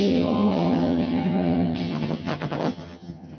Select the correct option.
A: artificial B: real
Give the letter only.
A